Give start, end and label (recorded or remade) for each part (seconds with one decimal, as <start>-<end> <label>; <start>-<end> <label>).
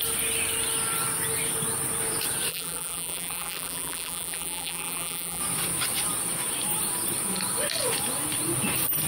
0.0-2.5 recorded; 2.5-5.4 remade; 5.4-9.1 recorded